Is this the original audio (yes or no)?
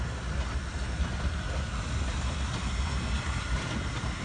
yes